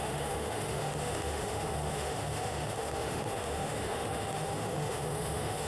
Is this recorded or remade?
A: remade